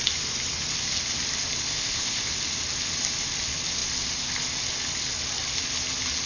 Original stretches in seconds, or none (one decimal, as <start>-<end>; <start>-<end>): 0.0-1.7; 2.3-6.3

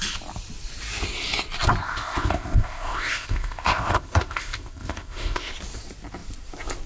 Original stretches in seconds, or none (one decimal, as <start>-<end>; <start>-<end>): 0.0-1.8; 5.5-6.9